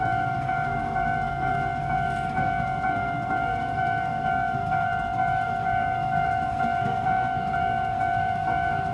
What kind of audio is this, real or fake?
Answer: fake